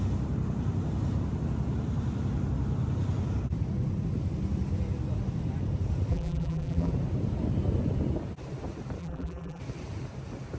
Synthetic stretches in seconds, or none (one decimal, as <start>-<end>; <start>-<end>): 6.1-6.9; 9.0-9.6